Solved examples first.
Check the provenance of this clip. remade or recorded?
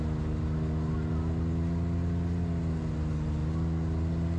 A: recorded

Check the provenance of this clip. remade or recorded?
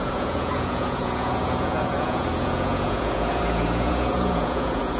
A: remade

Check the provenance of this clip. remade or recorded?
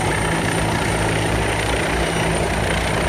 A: recorded